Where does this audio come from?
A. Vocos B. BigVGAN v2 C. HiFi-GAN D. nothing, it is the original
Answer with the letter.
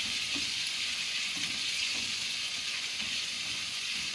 A